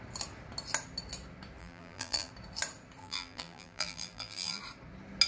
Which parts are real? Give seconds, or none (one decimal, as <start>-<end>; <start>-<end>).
0.0-1.6; 2.3-3.0; 4.6-5.3